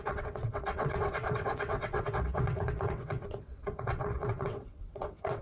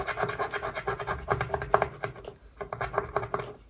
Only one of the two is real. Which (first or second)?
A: second